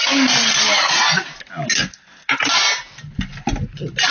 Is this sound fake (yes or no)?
no